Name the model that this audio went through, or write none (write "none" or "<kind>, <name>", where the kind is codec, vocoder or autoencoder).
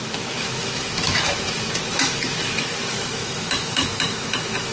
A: autoencoder, DAC-VAE